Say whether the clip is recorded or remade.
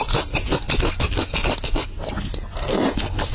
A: recorded